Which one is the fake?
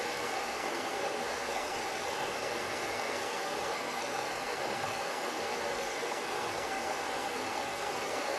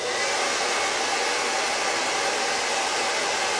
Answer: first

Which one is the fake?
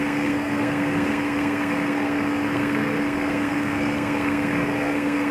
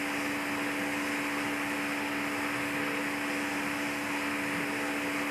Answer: first